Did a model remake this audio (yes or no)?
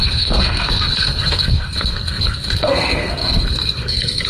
yes